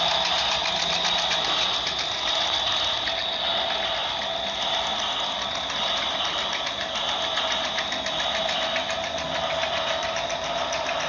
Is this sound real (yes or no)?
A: yes